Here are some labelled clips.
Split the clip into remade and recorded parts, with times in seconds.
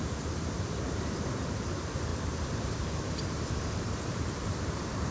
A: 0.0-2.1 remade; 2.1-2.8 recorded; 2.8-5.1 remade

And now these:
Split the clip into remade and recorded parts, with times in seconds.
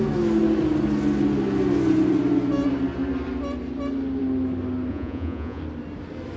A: 0.0-4.9 recorded; 4.9-5.6 remade; 5.6-6.4 recorded